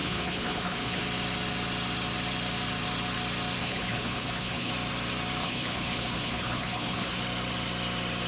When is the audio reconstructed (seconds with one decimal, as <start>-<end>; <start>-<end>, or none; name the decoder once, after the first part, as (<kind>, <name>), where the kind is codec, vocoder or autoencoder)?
0.0-1.0 (codec, HILCodec); 3.6-4.7; 5.4-7.2